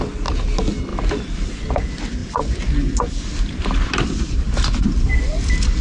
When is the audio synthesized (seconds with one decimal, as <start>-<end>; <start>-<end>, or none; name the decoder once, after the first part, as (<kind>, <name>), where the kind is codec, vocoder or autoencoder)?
0.9-1.5 (vocoder, BigVGAN v2); 2.2-5.8

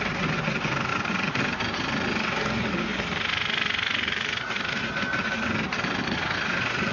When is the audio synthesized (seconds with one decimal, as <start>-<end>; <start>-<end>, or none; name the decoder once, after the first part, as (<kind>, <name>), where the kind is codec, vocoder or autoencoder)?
none